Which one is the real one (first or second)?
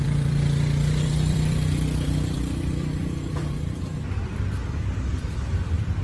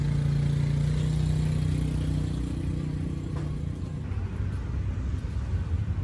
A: second